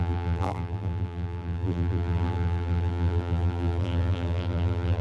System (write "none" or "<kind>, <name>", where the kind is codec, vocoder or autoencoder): vocoder, BigVGAN v2